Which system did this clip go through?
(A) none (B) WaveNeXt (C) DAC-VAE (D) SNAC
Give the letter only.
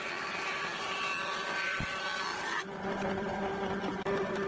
A